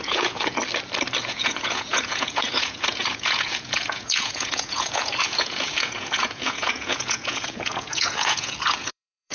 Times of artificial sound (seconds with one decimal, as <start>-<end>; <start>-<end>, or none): 0.0-0.6; 1.2-9.3